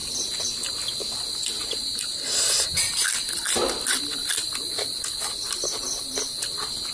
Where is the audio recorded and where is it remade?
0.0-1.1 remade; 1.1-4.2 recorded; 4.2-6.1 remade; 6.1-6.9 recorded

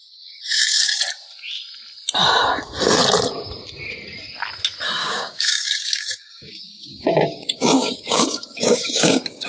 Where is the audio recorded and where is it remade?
0.0-1.0 remade; 1.0-5.0 recorded; 5.0-9.5 remade

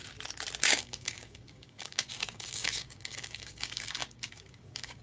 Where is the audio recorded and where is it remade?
0.0-0.6 recorded; 0.6-5.0 remade

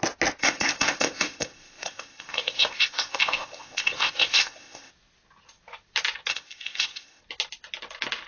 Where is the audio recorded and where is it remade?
0.0-0.4 recorded; 0.4-4.9 remade; 4.9-6.3 recorded; 6.3-7.2 remade; 7.2-8.3 recorded

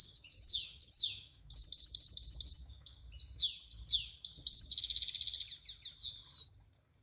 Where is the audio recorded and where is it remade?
0.0-3.0 remade; 3.0-4.5 recorded; 4.5-5.0 remade; 5.0-7.0 recorded

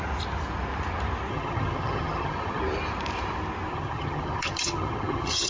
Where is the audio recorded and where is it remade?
0.0-1.3 recorded; 1.3-2.6 remade; 2.6-3.7 recorded; 3.7-5.5 remade